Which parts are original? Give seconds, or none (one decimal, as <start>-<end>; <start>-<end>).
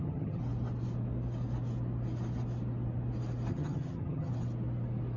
0.4-3.5; 4.3-5.2